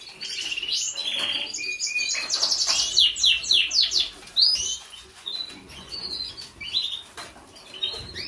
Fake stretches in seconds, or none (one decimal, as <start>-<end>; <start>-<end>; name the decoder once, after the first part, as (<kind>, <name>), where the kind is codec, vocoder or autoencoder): 4.7-6.3 (vocoder, Vocos)